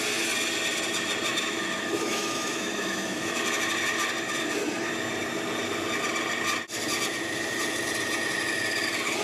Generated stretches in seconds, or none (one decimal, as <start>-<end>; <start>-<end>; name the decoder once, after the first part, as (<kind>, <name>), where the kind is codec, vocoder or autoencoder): 1.3-3.4 (autoencoder, DAC-VAE)